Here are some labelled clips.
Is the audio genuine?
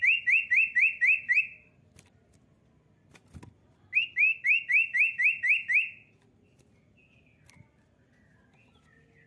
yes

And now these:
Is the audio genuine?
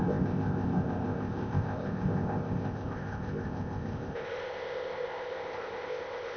no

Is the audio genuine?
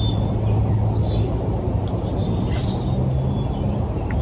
yes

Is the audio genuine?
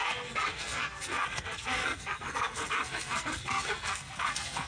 no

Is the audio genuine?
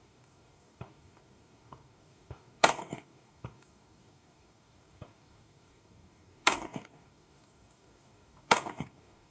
no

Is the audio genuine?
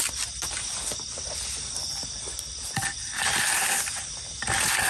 yes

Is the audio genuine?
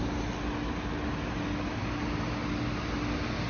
yes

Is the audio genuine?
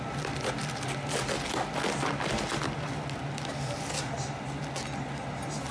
yes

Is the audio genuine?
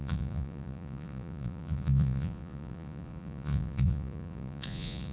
no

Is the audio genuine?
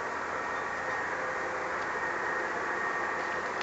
yes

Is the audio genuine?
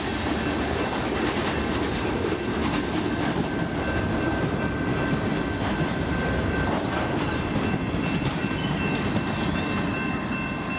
yes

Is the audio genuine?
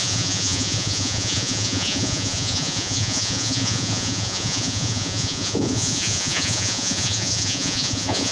no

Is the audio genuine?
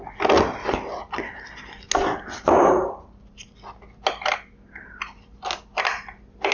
yes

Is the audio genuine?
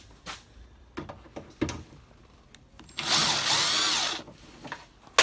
yes